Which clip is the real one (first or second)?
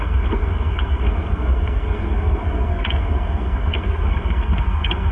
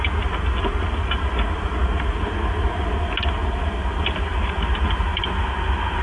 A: second